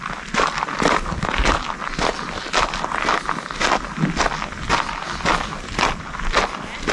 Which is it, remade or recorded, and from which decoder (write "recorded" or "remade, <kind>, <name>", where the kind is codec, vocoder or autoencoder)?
recorded